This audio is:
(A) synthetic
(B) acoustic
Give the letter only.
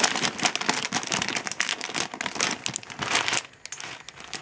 B